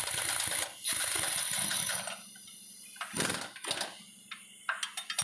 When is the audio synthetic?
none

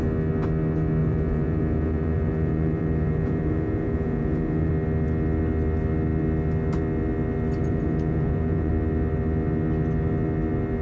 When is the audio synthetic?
1.0-4.7 (vocoder, Vocos); 7.6-8.7

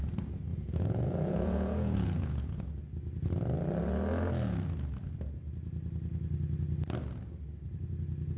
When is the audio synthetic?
0.5-2.6 (vocoder, Vocos)